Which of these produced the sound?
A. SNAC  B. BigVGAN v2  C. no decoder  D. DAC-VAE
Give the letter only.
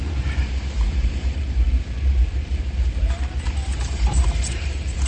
B